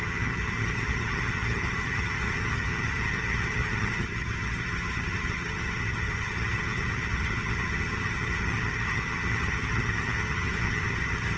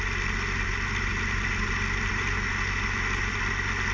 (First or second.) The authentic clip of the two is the second